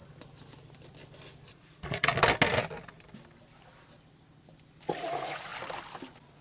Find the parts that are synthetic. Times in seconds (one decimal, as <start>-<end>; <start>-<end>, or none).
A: 1.5-2.1; 4.9-5.5